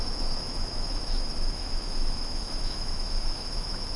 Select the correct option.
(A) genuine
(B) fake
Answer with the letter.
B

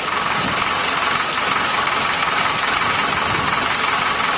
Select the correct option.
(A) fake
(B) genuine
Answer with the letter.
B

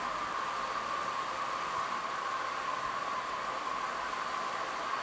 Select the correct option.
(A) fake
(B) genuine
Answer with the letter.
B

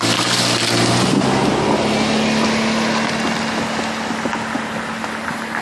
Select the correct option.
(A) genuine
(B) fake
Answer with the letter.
A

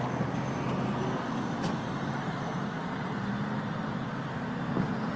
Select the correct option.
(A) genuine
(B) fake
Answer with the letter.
A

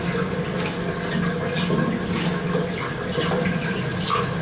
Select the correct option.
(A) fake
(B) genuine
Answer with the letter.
B